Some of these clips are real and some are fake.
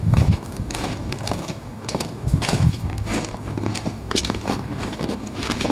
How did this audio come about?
fake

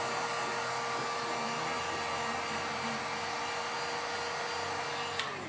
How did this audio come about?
real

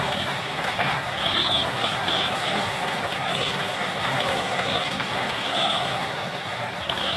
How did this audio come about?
fake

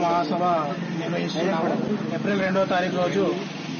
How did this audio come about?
real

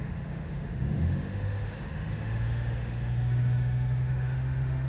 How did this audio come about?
fake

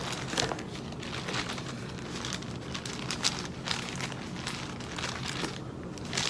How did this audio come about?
real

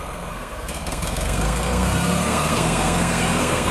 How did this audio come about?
fake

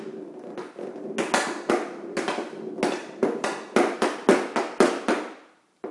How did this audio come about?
real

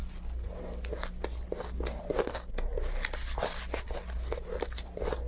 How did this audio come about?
real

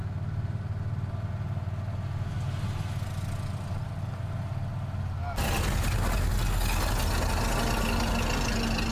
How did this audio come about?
real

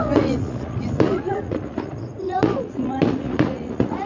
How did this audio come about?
fake